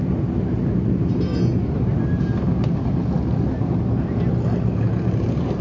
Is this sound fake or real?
real